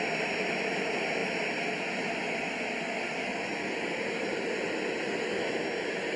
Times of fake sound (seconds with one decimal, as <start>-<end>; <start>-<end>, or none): none